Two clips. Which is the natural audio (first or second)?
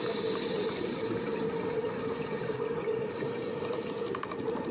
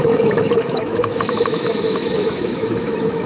first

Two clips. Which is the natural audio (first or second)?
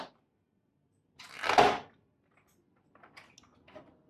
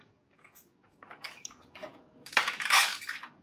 first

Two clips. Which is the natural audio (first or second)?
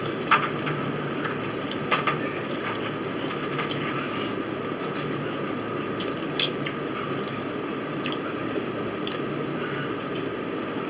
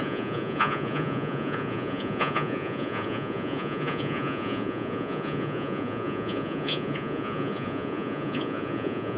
first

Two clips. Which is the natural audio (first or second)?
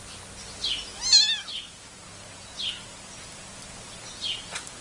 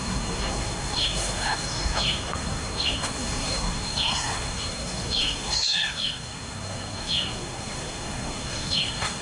first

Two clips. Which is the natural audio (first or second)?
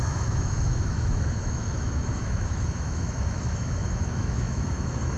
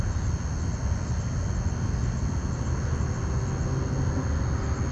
second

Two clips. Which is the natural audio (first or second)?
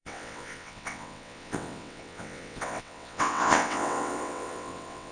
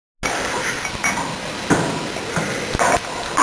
second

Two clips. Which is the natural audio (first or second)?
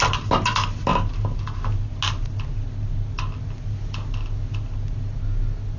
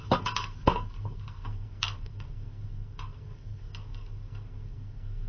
first